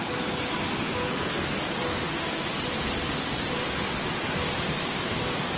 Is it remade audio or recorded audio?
recorded